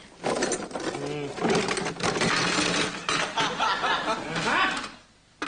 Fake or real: real